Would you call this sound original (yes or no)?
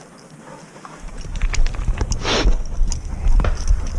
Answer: yes